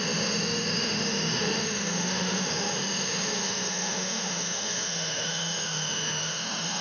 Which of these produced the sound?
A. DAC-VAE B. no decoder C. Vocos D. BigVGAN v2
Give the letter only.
A